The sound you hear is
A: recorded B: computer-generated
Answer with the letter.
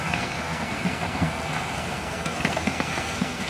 B